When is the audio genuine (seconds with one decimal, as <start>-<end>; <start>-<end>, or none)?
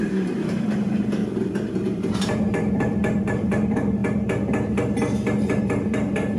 1.2-1.7; 2.6-3.2; 4.0-5.6